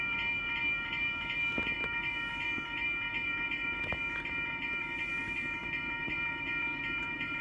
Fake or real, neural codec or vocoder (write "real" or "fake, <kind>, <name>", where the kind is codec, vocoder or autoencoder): fake, vocoder, BigVGAN v2